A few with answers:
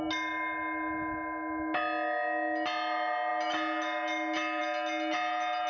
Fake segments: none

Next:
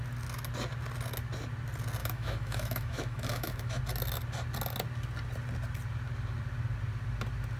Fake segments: 2.0-3.8 (autoencoder, DAC-VAE)